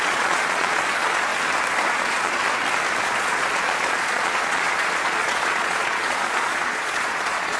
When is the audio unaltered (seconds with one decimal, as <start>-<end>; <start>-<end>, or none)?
1.3-1.9; 2.4-3.0